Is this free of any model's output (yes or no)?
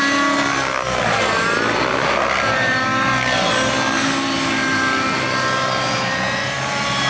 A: yes